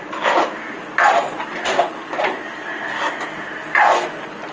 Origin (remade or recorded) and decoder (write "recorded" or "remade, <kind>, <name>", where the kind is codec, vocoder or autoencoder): recorded